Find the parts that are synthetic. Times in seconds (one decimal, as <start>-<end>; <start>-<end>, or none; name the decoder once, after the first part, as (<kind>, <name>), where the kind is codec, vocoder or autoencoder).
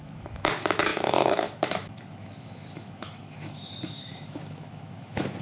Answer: 0.0-5.4 (autoencoder, DAC-VAE)